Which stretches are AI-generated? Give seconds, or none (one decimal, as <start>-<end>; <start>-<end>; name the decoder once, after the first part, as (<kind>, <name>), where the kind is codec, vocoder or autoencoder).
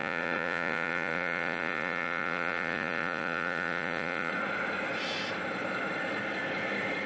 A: 0.0-4.3 (vocoder, Vocos)